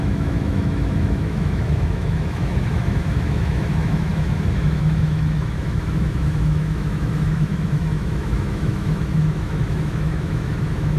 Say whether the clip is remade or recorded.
remade